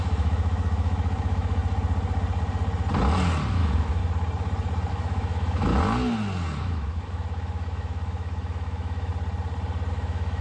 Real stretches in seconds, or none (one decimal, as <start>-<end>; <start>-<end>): 1.6-3.5; 4.0-4.9; 5.7-6.6; 9.1-9.9